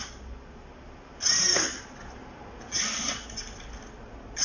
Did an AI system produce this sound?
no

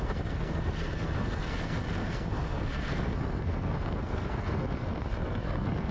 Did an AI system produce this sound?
yes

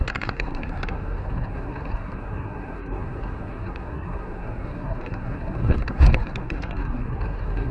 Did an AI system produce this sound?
yes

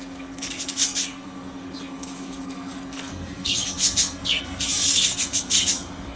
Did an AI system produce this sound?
yes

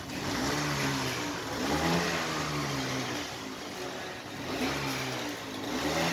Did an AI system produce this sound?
no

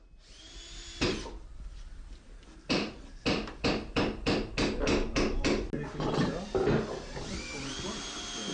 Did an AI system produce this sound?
no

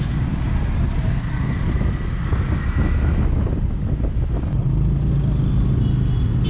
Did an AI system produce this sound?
no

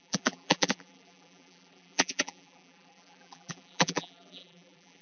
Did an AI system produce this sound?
yes